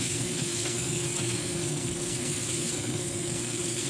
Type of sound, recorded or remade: remade